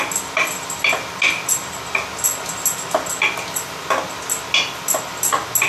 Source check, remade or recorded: recorded